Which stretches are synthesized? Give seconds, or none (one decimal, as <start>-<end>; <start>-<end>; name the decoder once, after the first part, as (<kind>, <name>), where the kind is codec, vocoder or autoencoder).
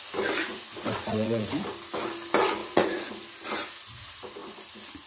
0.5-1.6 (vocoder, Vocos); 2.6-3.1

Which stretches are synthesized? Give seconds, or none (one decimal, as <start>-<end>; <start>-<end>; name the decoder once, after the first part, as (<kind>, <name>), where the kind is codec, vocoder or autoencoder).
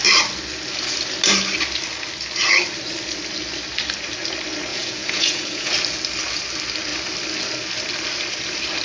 4.7-5.7 (vocoder, Vocos)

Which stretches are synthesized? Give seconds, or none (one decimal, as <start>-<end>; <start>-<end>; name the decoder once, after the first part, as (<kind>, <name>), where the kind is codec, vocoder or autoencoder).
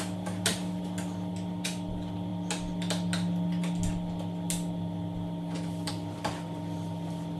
none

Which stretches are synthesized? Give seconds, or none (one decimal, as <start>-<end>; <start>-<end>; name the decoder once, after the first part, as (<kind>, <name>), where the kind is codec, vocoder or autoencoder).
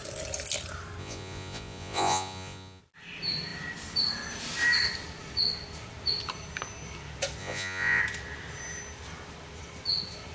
1.0-2.8 (vocoder, Vocos); 7.4-8.0